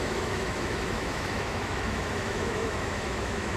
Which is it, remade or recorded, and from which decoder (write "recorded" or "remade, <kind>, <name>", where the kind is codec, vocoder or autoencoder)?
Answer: remade, autoencoder, DAC-VAE